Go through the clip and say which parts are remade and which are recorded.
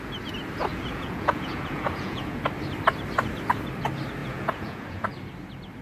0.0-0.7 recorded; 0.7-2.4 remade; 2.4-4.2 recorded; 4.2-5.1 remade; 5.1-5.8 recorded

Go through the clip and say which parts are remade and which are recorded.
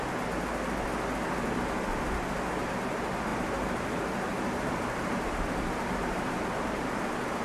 0.0-3.3 recorded; 3.3-6.3 remade; 6.3-7.4 recorded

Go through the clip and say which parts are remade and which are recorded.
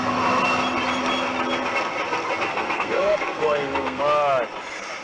0.0-2.5 recorded; 2.5-4.0 remade; 4.0-5.0 recorded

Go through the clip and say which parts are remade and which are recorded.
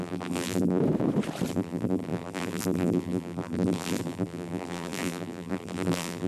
0.0-0.8 remade; 0.8-1.5 recorded; 1.5-6.3 remade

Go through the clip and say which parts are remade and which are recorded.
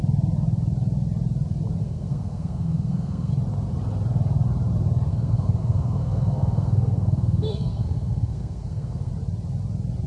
0.0-1.8 recorded; 1.8-3.3 remade; 3.3-5.1 recorded; 5.1-9.1 remade; 9.1-10.1 recorded